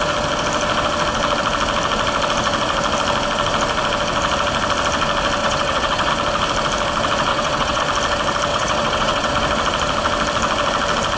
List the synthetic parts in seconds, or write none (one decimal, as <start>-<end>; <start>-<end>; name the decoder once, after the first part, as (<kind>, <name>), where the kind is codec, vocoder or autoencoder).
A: 5.4-6.1 (vocoder, WaveNeXt); 7.3-7.8; 8.5-9.3